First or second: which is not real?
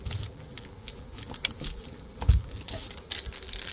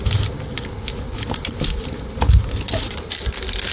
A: first